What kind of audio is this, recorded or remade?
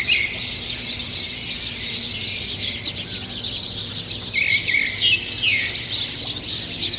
recorded